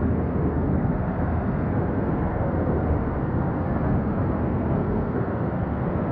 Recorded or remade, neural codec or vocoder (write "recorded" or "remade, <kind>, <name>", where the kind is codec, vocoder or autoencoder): remade, codec, SNAC